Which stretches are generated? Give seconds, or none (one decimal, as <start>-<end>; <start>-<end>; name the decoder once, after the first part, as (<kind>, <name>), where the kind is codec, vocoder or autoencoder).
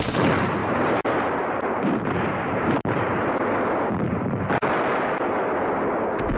0.6-3.3 (vocoder, BigVGAN v2)